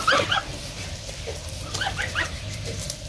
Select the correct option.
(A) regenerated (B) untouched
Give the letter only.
B